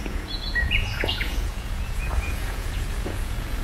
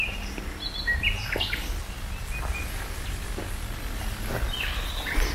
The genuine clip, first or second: second